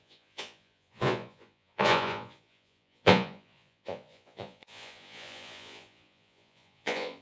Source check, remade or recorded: remade